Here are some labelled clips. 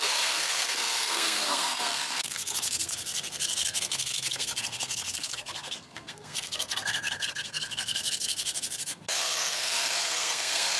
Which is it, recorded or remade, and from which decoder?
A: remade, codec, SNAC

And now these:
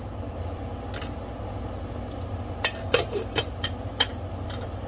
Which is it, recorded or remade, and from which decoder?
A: recorded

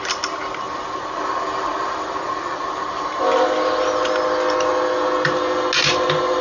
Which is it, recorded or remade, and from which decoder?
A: recorded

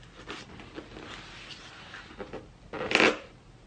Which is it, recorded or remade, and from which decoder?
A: recorded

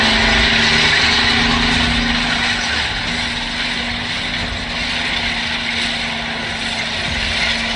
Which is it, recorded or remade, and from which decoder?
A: recorded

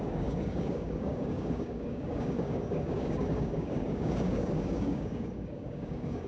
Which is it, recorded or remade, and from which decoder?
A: remade, codec, DAC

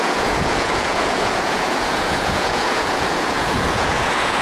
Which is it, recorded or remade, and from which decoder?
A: remade, vocoder, Vocos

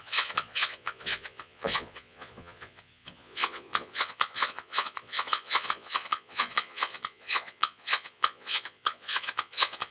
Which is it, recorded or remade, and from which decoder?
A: remade, vocoder, Vocos